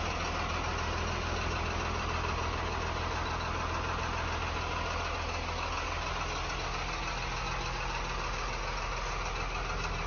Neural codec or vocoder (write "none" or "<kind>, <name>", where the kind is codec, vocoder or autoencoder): none